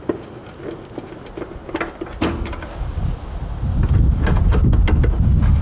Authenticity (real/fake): real